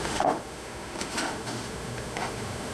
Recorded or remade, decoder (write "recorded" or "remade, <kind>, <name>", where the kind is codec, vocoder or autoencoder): remade, autoencoder, DAC-VAE